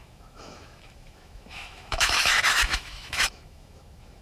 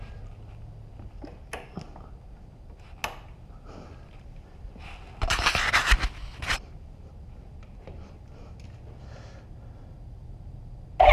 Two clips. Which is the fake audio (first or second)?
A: first